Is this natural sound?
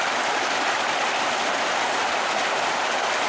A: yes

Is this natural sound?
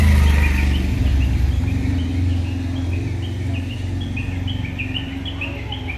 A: yes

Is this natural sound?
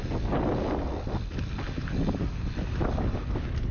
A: yes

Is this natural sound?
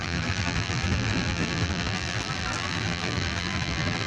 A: no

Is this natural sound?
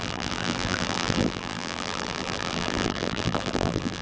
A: no